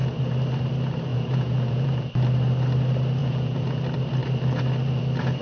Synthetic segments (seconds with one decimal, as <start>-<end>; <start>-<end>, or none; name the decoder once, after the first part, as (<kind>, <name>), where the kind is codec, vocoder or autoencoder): 1.1-2.1 (vocoder, Vocos); 3.2-3.8